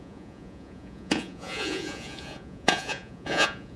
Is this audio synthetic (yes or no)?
yes